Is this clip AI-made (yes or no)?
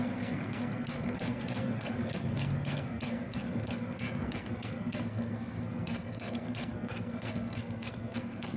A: yes